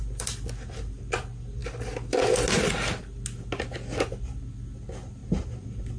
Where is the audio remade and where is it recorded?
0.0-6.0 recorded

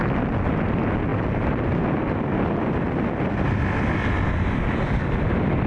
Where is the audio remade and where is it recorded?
0.0-5.7 recorded